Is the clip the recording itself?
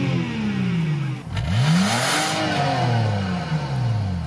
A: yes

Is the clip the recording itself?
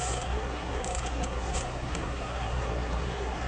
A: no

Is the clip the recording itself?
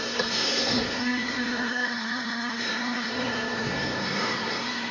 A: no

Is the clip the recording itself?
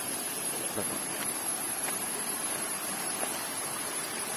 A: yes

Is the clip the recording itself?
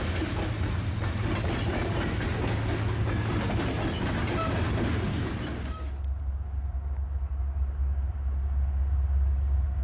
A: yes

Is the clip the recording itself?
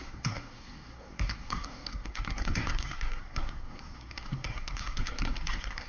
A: no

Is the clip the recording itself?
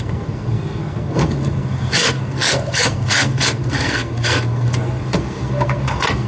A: no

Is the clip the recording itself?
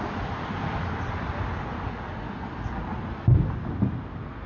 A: yes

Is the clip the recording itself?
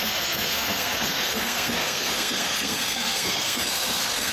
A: no